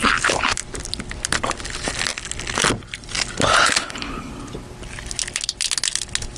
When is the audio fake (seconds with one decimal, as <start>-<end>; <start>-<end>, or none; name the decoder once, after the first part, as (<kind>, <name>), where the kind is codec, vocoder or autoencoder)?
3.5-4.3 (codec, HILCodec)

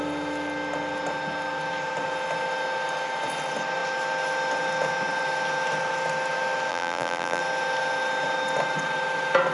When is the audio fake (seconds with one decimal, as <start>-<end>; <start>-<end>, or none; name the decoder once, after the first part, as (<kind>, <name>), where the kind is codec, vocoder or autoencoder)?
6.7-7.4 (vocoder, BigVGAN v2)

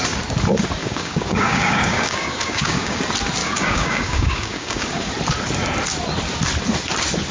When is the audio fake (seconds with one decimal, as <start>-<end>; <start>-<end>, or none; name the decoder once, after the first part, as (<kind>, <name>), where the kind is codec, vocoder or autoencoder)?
0.8-3.0 (codec, DAC); 3.4-5.1

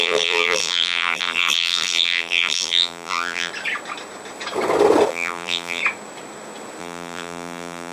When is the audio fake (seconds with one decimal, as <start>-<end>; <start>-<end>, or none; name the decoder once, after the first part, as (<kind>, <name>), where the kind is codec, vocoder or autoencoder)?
0.0-3.5 (vocoder, BigVGAN v2); 5.1-5.8; 6.8-7.9

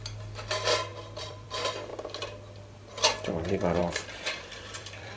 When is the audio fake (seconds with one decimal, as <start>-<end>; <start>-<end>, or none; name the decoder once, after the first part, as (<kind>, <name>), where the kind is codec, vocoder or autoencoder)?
0.9-1.5 (vocoder, BigVGAN v2); 3.8-5.2

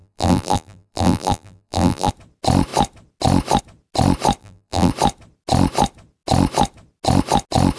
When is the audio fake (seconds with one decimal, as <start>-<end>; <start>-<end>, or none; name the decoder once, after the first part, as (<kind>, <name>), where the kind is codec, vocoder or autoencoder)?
0.0-2.1 (vocoder, BigVGAN v2); 4.4-4.9

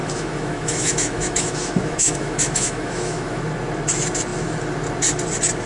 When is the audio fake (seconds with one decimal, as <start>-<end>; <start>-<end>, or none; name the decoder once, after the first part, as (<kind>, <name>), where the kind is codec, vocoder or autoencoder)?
0.0-3.4 (autoencoder, DAC-VAE)

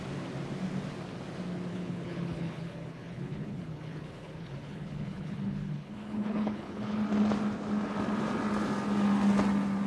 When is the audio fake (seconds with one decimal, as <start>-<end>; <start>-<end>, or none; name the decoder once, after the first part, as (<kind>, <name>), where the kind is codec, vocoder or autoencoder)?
1.7-7.0 (codec, HILCodec)